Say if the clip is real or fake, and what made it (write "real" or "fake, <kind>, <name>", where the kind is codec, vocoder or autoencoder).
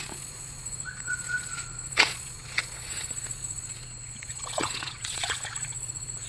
fake, vocoder, Vocos